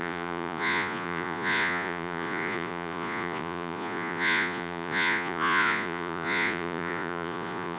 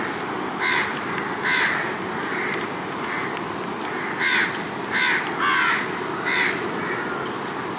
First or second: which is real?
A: second